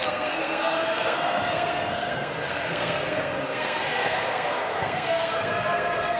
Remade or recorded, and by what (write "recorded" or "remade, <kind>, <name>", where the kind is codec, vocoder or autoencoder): remade, codec, SNAC